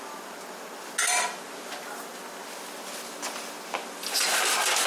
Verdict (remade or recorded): recorded